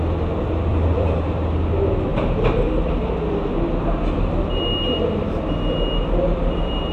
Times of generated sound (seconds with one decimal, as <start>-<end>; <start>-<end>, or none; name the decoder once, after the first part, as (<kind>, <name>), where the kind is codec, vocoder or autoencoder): 0.7-1.5 (vocoder, BigVGAN v2)